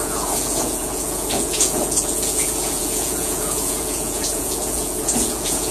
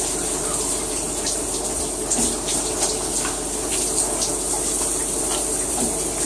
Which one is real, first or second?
second